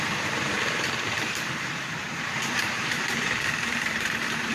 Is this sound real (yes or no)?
no